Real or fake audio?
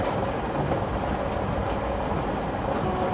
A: real